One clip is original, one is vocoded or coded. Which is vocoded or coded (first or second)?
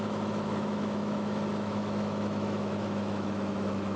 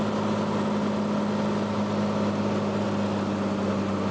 first